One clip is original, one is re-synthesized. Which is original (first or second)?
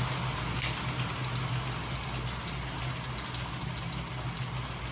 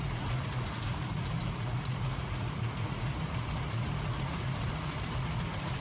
first